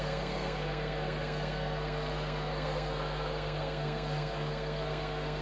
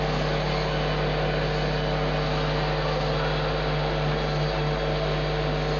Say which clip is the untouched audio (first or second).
second